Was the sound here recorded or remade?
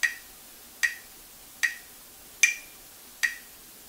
recorded